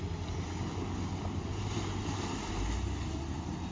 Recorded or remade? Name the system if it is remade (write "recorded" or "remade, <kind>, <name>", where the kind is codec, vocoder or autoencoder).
recorded